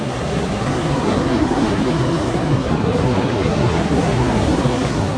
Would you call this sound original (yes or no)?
no